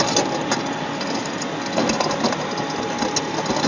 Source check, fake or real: real